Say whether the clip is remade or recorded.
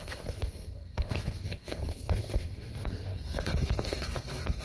remade